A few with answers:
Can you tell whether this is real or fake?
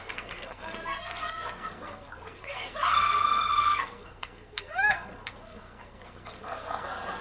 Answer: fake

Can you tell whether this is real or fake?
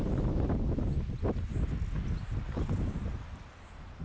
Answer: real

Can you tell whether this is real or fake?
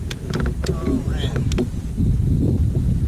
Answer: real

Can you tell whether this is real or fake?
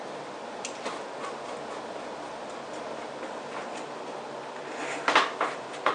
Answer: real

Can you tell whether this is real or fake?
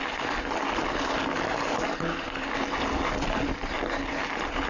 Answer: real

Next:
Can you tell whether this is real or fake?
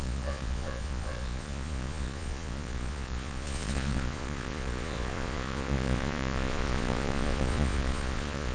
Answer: fake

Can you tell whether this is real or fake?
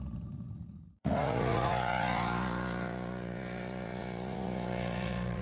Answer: fake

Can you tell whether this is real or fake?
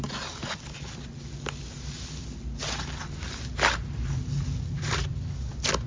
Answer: real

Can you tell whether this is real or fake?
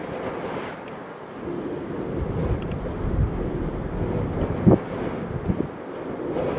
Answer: real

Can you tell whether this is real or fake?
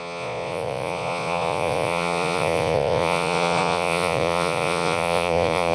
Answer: fake